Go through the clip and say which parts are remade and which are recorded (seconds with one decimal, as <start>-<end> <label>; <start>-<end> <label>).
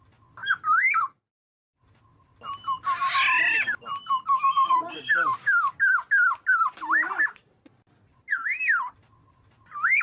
0.0-10.0 recorded